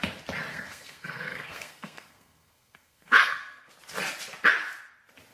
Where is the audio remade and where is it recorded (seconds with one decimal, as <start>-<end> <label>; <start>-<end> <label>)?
0.0-0.5 recorded; 0.5-3.7 remade; 3.7-5.3 recorded